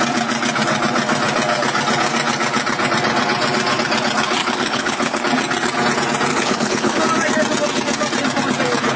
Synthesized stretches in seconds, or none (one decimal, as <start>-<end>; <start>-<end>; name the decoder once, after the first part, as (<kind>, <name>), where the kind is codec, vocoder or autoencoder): 4.4-5.2 (codec, HILCodec); 6.3-7.0